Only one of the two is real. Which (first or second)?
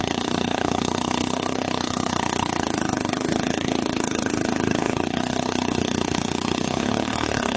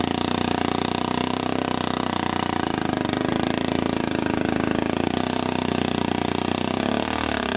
second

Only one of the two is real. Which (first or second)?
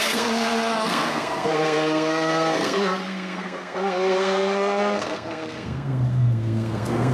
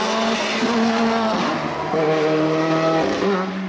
second